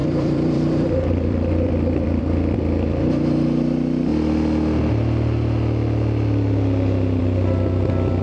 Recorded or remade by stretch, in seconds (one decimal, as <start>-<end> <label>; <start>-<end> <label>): 0.0-2.2 remade; 2.2-8.2 recorded

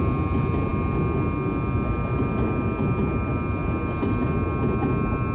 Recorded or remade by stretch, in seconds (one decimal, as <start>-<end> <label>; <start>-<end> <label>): 0.0-5.3 recorded

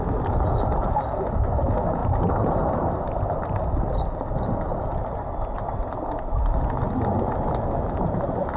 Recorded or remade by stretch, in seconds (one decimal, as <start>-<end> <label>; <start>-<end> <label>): 0.0-8.6 recorded

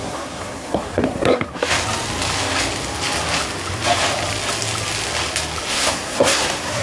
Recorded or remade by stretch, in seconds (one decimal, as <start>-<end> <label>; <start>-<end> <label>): 0.0-1.6 remade; 1.6-5.7 recorded; 5.7-6.8 remade

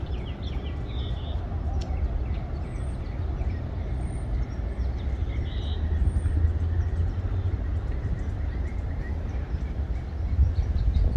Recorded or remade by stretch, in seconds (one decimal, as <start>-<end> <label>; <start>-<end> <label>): 0.0-11.2 recorded

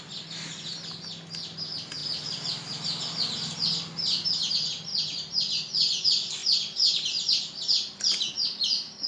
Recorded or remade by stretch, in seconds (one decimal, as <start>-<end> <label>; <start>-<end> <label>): 0.0-9.1 recorded

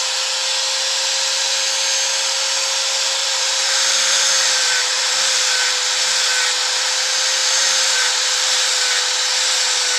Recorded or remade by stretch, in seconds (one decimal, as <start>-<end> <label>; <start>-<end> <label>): 0.0-3.2 recorded; 3.2-6.0 remade; 6.0-7.4 recorded; 7.4-8.7 remade; 8.7-10.0 recorded

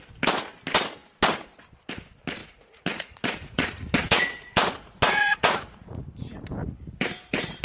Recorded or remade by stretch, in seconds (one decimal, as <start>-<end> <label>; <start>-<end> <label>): 0.0-2.4 recorded; 2.4-6.0 remade; 6.0-6.6 recorded; 6.6-7.6 remade